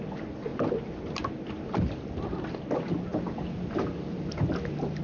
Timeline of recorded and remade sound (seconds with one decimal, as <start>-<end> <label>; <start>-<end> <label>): 0.0-5.0 recorded